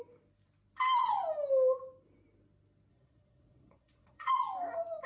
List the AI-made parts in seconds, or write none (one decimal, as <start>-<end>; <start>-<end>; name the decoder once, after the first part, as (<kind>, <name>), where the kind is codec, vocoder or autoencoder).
2.9-4.3 (vocoder, Vocos)